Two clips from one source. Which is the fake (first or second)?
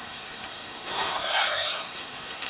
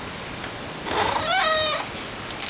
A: first